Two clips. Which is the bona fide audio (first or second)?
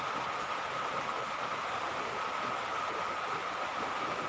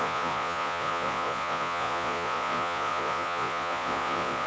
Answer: first